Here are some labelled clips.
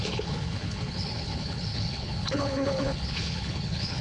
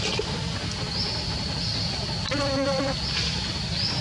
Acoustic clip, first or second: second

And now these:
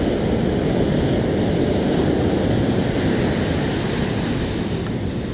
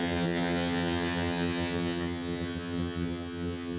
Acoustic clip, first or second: first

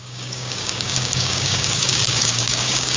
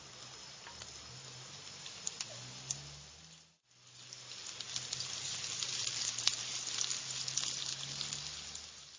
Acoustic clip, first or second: second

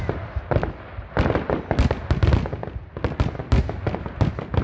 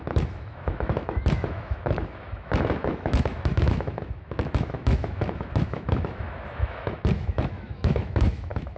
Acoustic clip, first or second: first